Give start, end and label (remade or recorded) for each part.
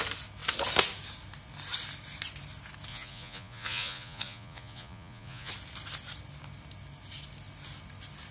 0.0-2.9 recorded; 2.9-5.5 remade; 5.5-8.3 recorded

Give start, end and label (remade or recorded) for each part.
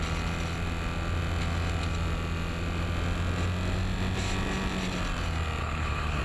0.0-5.6 recorded; 5.6-6.2 remade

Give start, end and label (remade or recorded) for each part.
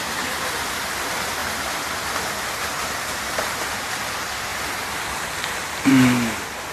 0.0-6.7 recorded